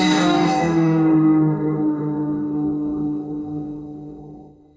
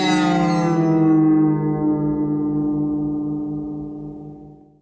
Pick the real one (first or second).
second